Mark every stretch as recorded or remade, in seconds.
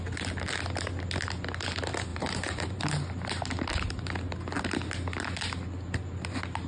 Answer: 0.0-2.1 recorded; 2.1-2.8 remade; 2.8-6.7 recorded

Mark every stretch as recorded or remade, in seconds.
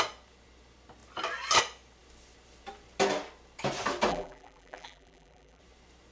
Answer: 0.0-4.1 recorded; 4.1-5.6 remade; 5.6-6.1 recorded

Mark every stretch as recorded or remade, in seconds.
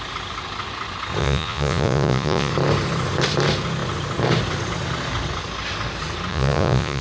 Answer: 0.0-1.2 recorded; 1.2-2.5 remade; 2.5-6.3 recorded; 6.3-7.0 remade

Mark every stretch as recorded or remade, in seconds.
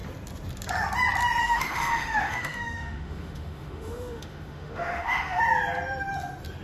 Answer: 0.0-1.4 recorded; 1.4-5.4 remade; 5.4-6.6 recorded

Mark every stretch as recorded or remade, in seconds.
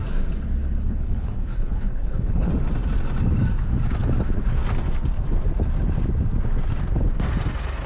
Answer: 0.0-0.8 recorded; 0.8-2.5 remade; 2.5-7.9 recorded